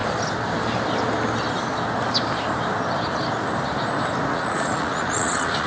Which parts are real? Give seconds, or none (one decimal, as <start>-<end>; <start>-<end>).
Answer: 0.0-4.3